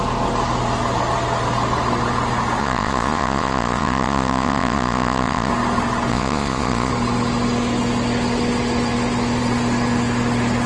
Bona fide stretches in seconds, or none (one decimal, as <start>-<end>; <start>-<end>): 0.0-2.6; 5.5-6.1; 6.9-10.7